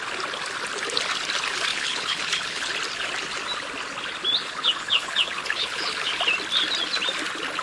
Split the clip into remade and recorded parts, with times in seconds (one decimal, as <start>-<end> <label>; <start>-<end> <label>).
0.0-1.7 recorded; 1.7-2.7 remade; 2.7-4.4 recorded; 4.4-6.2 remade; 6.2-7.6 recorded